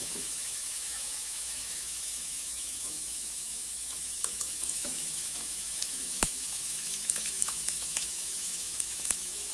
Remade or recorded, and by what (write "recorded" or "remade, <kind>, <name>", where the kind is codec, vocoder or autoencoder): remade, autoencoder, DAC-VAE